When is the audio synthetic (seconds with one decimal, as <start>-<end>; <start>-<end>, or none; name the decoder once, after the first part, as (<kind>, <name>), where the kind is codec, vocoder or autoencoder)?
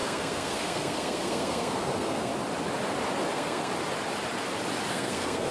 0.0-2.3 (codec, SNAC); 3.3-3.7; 4.9-5.5